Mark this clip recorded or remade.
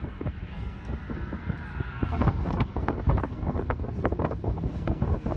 remade